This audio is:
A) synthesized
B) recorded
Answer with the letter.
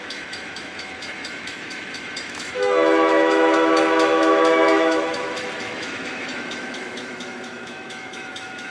A